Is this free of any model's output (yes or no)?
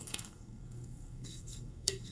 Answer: no